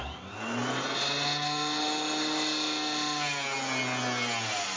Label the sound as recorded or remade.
recorded